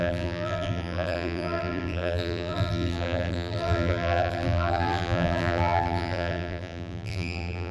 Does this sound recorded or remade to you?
remade